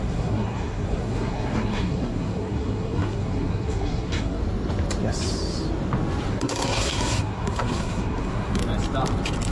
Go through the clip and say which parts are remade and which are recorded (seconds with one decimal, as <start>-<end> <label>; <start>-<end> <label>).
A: 0.0-4.4 remade; 4.4-6.3 recorded; 6.3-8.6 remade; 8.6-9.5 recorded